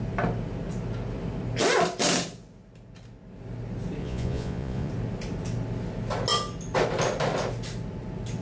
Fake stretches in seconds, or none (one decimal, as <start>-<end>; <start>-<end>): 4.0-4.9